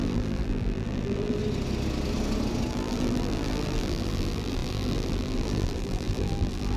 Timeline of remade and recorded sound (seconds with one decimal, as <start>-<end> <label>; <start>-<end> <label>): 0.0-1.4 remade; 1.4-2.7 recorded; 2.7-6.8 remade